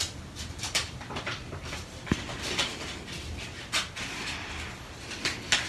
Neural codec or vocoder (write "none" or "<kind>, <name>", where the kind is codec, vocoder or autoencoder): none